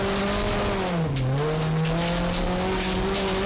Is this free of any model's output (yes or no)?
yes